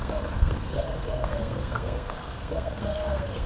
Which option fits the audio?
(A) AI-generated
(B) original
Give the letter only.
A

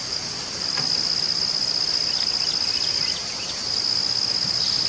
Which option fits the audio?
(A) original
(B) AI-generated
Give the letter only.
A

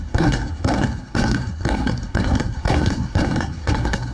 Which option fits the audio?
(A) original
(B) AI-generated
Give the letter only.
B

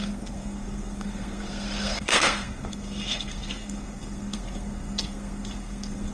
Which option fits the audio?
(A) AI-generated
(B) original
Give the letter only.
A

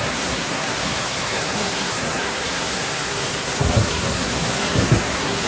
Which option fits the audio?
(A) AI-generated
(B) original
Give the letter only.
A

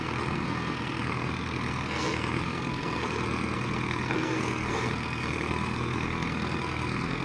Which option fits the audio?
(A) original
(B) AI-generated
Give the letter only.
B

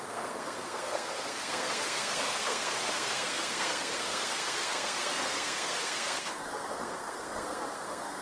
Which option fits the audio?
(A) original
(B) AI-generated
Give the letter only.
B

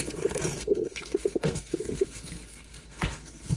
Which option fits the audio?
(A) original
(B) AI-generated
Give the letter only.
B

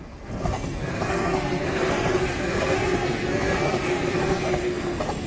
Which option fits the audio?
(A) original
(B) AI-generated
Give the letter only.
B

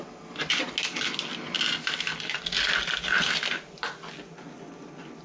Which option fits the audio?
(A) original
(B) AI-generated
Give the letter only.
A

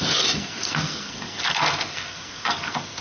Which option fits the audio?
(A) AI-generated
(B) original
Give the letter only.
A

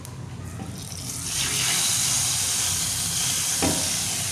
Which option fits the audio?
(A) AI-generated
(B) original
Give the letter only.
B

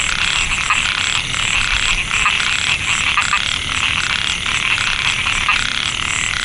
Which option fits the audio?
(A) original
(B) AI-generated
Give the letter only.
A